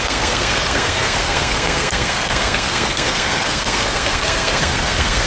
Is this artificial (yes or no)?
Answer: yes